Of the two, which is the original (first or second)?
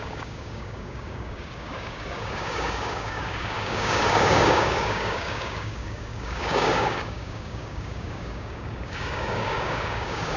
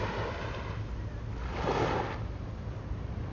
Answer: second